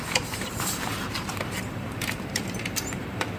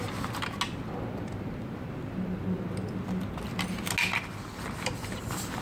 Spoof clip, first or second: first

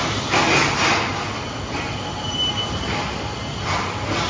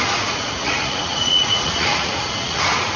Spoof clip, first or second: second